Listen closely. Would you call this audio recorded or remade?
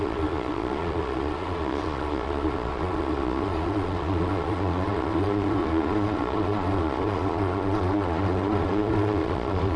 remade